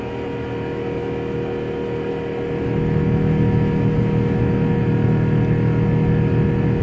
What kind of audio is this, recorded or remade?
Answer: recorded